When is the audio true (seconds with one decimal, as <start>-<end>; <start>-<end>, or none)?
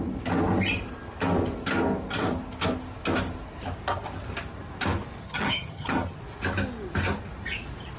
0.0-5.2; 6.2-8.0